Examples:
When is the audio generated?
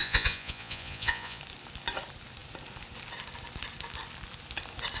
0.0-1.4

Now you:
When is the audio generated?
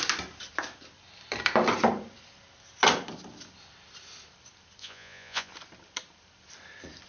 4.8-5.5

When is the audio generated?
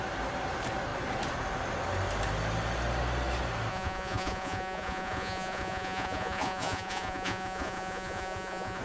3.7-8.8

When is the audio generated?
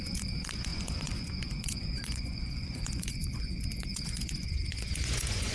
0.0-5.5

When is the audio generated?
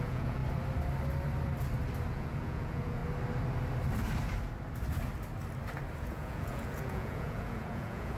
0.0-0.4; 2.1-3.0; 6.0-8.2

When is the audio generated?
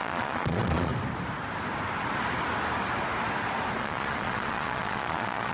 0.0-0.9; 3.8-5.5